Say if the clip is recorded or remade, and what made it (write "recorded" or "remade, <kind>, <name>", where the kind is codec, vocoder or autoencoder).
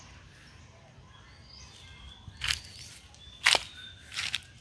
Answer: recorded